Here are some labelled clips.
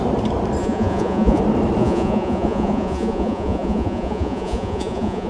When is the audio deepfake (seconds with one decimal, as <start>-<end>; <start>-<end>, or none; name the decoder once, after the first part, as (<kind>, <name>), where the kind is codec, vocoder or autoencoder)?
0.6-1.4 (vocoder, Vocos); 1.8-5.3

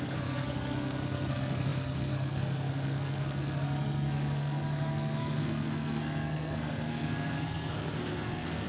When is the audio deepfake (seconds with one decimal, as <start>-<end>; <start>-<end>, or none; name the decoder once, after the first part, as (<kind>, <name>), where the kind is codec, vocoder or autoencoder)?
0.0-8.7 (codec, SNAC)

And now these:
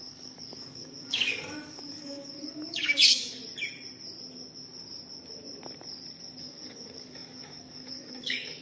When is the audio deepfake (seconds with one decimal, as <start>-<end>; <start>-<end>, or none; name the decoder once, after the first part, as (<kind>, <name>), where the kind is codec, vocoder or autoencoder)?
0.0-3.4 (codec, DAC); 6.4-8.6

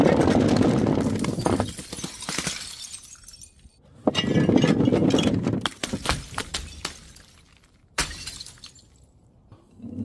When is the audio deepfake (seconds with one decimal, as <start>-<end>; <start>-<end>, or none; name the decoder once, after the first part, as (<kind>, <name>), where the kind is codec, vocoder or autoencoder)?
5.0-5.8 (vocoder, BigVGAN v2); 6.4-6.9; 8.0-9.2

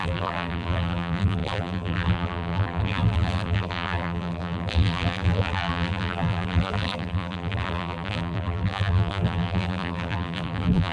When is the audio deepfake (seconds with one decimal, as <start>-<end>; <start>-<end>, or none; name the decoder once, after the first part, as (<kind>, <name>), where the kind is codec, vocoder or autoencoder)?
0.0-10.9 (vocoder, BigVGAN v2)

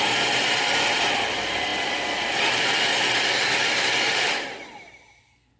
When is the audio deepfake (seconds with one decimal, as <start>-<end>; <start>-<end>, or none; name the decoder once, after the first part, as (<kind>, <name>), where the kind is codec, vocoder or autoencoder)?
none

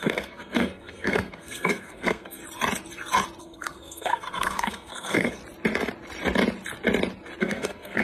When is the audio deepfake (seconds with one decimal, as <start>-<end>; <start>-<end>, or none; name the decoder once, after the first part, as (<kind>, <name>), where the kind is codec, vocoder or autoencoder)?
0.0-2.4 (codec, SNAC); 3.4-5.4; 7.4-8.0